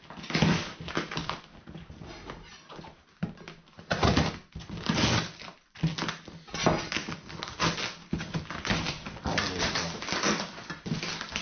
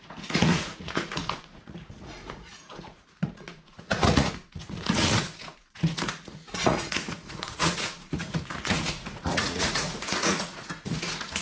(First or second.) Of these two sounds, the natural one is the first